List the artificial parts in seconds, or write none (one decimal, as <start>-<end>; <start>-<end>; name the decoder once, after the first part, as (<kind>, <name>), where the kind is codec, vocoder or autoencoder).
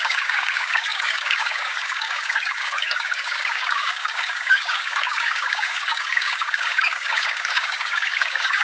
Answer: 0.0-8.6 (codec, DAC)